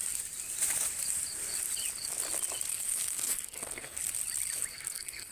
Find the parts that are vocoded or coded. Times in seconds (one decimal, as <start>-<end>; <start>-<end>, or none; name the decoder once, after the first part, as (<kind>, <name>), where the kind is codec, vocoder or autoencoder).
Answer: 2.7-4.0 (codec, SNAC); 4.7-5.3